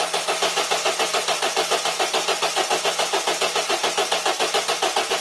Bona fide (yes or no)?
yes